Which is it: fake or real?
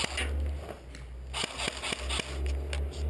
real